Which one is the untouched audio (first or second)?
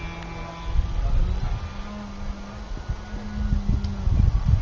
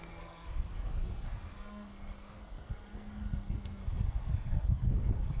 first